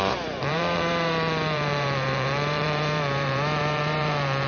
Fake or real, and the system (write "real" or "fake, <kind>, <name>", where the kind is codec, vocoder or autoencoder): fake, vocoder, BigVGAN v2